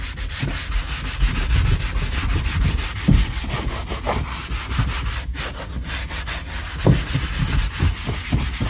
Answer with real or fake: real